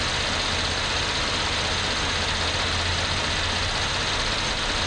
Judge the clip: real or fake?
real